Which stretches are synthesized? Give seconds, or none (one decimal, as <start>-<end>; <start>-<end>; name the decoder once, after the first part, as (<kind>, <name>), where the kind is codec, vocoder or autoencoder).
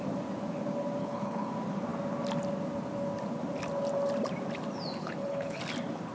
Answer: 1.0-1.5 (codec, HILCodec); 5.0-5.6